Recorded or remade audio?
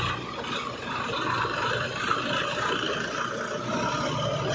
recorded